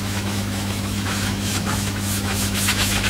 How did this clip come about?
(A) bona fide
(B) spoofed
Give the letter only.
B